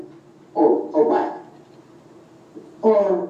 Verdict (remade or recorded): recorded